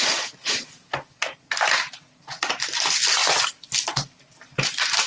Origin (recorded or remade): recorded